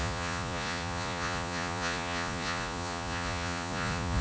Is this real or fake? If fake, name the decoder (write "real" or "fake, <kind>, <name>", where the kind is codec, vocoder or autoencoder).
fake, vocoder, Vocos